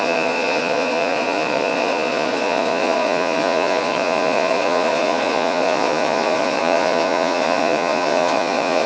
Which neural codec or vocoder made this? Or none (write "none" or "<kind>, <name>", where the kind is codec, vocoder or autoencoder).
vocoder, Vocos